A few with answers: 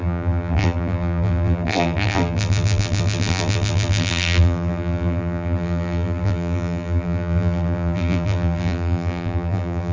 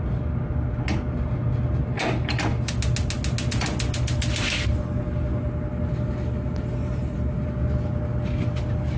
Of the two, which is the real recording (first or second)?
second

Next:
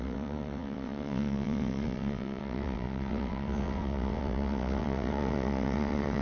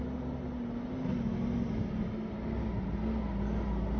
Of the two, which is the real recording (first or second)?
second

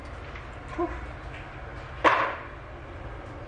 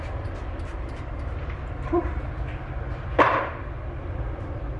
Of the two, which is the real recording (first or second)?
first